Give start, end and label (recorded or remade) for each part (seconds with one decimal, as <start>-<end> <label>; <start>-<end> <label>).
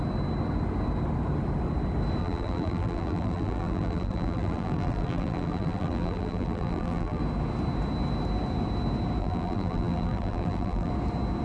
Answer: 0.0-2.2 recorded; 2.2-7.2 remade; 7.2-9.2 recorded; 9.2-10.9 remade; 10.9-11.4 recorded